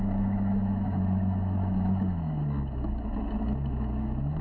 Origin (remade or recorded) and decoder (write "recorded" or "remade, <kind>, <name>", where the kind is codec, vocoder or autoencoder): remade, autoencoder, DAC-VAE